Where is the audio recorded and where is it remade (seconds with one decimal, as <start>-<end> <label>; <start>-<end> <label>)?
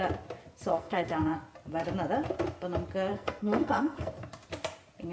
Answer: 0.0-0.7 recorded; 0.7-1.4 remade; 1.4-3.1 recorded; 3.1-4.1 remade; 4.1-5.1 recorded